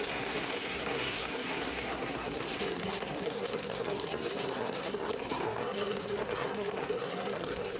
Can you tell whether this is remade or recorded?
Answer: remade